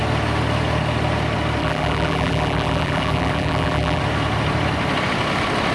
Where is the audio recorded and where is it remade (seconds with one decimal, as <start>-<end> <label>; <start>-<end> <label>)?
0.0-1.6 recorded; 1.6-4.0 remade; 4.0-5.7 recorded